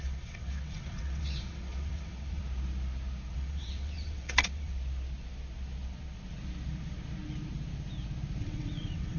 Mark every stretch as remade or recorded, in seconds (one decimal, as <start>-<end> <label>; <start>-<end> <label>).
0.0-2.4 remade; 2.4-3.3 recorded; 3.3-4.7 remade; 4.7-8.4 recorded; 8.4-9.2 remade